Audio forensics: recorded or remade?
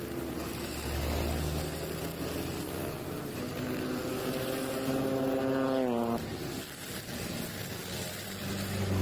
recorded